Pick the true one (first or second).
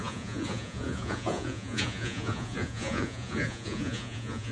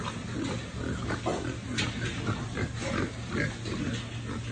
second